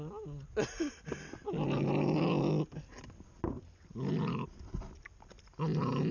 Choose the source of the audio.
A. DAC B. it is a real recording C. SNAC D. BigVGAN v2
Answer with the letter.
B